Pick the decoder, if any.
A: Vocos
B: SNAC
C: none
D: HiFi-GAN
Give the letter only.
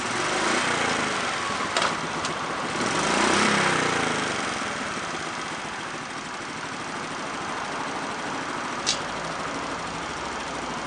C